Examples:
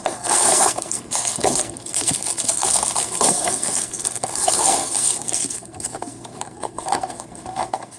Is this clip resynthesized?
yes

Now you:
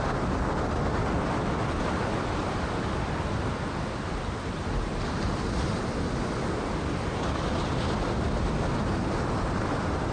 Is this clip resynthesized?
no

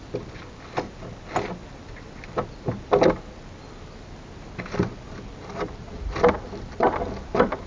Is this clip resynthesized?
no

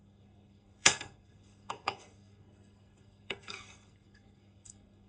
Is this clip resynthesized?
yes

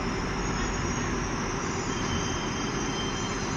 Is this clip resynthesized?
no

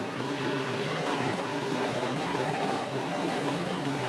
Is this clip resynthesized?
yes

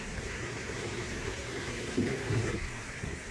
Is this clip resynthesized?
yes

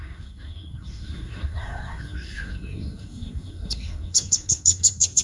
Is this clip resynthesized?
yes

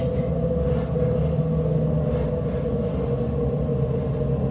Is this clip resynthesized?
no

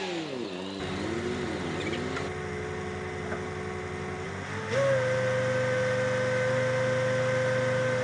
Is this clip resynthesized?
no